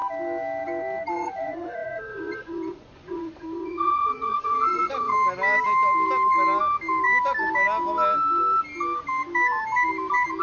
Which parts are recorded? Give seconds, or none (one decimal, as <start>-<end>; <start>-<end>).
0.0-1.1; 5.1-10.4

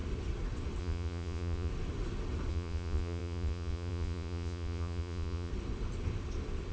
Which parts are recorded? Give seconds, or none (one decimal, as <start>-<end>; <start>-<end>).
0.0-0.8; 1.7-2.5; 5.5-6.7